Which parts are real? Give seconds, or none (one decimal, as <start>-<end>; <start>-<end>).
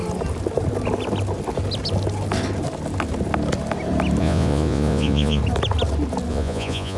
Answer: 0.0-4.2; 5.4-6.3